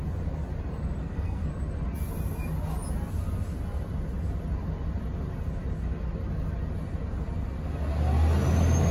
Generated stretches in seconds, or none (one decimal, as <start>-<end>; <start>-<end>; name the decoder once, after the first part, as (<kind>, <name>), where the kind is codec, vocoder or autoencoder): 1.0-1.5 (codec, SNAC)